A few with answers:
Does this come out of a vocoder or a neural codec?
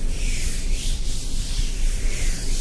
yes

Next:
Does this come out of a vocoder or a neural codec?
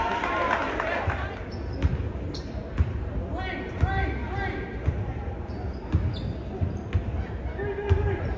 no